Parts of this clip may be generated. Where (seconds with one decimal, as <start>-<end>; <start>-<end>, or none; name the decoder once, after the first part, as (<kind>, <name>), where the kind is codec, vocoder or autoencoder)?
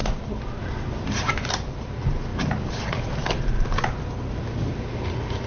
none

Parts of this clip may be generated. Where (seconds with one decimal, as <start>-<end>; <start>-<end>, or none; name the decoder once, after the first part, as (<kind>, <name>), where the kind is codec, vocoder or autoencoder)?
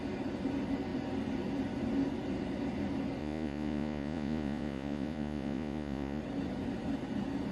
3.2-6.2 (vocoder, Vocos)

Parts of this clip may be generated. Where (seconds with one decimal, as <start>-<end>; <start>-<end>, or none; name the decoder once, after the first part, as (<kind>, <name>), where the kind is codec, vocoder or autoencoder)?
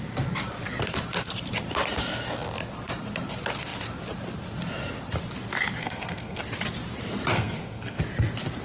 5.8-6.4 (codec, SNAC); 7.3-8.0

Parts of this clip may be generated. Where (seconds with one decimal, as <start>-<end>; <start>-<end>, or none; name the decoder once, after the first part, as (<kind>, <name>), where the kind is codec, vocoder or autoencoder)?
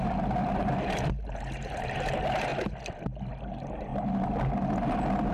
0.0-2.5 (vocoder, BigVGAN v2); 3.5-3.9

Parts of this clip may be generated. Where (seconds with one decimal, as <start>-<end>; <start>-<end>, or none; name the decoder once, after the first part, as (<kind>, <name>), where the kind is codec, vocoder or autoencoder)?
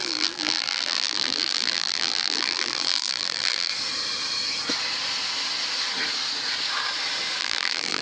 0.0-3.7 (vocoder, BigVGAN v2); 7.4-8.0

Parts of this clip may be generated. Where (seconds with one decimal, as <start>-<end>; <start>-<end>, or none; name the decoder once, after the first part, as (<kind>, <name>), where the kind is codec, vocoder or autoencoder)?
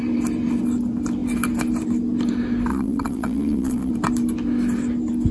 2.7-3.9 (vocoder, Vocos)